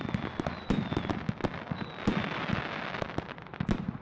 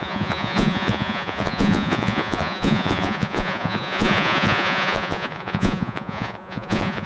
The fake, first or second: second